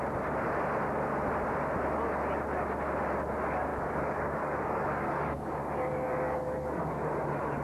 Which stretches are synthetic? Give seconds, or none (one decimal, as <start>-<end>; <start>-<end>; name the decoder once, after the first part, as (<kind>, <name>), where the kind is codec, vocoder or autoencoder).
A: 3.7-7.1 (codec, DAC)